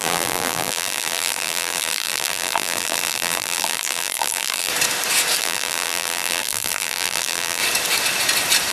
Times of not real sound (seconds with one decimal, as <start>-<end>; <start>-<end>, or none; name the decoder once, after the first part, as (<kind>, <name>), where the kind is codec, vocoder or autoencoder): 0.0-4.7 (vocoder, BigVGAN v2); 5.4-7.6